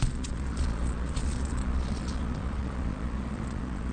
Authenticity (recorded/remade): remade